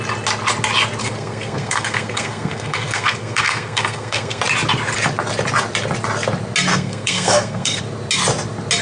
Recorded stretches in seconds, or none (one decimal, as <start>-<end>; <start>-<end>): 0.0-1.0; 4.4-6.7; 7.8-8.8